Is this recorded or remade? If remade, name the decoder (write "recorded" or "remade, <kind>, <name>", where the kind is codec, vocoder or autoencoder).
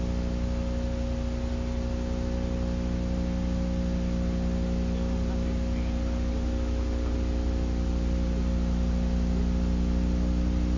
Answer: recorded